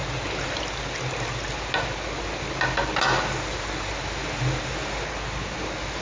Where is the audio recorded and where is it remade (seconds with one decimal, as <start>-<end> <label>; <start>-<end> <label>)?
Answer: 0.0-6.0 recorded